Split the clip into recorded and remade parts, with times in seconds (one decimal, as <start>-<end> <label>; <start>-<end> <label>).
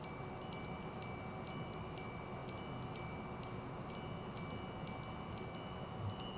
0.0-6.4 recorded